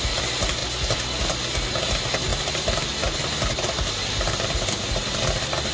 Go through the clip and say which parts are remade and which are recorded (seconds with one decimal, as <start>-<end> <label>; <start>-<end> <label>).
0.0-5.7 recorded